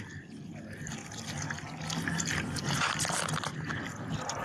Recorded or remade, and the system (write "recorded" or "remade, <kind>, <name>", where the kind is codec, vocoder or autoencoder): recorded